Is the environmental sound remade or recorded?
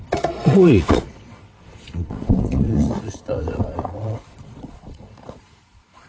remade